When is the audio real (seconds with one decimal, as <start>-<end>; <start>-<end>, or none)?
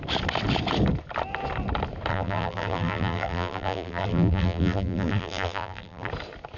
0.0-2.1; 6.1-6.6